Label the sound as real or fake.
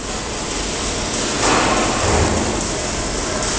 real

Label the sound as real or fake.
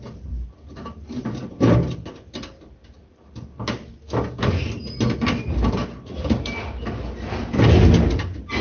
real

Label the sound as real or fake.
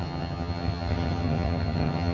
fake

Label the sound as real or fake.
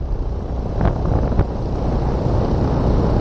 real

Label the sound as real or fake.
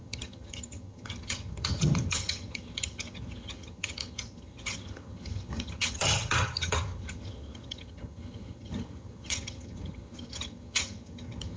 fake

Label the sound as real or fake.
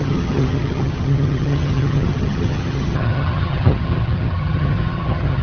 fake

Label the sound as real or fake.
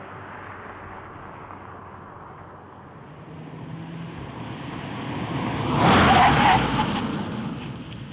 real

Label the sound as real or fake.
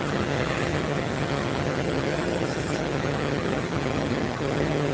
fake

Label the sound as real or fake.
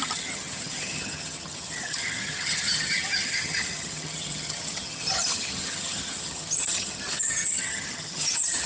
fake